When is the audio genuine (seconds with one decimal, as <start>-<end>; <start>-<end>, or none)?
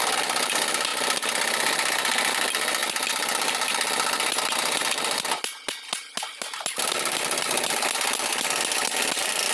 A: 0.0-9.5